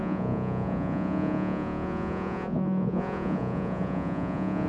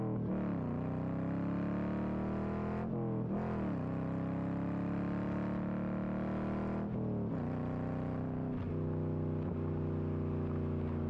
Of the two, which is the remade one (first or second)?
first